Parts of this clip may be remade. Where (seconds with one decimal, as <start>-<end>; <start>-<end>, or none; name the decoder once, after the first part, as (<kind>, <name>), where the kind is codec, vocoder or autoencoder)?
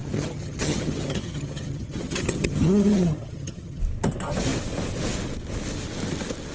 0.0-3.8 (vocoder, HiFi-GAN)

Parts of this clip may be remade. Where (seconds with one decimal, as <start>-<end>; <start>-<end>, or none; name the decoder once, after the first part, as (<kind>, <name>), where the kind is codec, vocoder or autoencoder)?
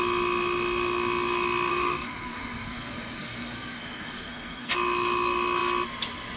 1.7-4.7 (codec, SNAC)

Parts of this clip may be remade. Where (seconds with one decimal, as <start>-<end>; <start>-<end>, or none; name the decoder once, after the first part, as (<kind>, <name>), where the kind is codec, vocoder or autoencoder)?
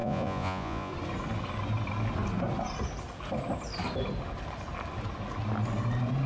0.0-0.9 (vocoder, Vocos)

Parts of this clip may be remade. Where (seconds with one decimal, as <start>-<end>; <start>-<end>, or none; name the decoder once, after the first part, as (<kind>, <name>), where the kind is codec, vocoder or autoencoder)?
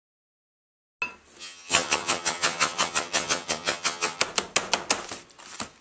1.4-4.2 (vocoder, HiFi-GAN)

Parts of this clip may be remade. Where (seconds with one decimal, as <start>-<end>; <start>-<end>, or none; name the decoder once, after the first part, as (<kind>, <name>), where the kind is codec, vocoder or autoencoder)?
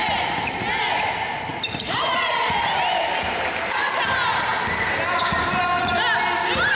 1.5-4.0 (vocoder, BigVGAN v2)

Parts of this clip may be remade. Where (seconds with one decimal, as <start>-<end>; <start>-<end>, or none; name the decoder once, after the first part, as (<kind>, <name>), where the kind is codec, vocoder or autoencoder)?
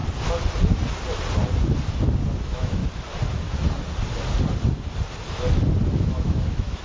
2.3-2.8 (autoencoder, DAC-VAE); 6.0-6.8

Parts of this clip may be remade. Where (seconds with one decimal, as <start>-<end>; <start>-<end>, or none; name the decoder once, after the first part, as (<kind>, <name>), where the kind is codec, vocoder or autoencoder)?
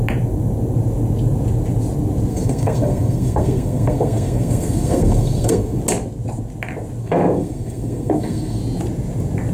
2.3-5.8 (codec, SNAC); 7.0-8.6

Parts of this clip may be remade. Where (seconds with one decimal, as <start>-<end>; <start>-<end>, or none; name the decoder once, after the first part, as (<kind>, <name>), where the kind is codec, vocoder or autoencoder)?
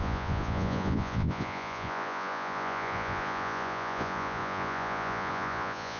0.0-6.0 (vocoder, Vocos)